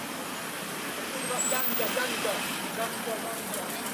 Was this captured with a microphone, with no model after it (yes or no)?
yes